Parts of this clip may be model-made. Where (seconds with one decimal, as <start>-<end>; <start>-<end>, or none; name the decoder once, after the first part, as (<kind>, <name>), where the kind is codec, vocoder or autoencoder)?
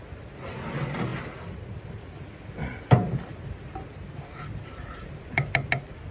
none